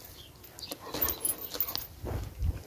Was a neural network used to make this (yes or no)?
no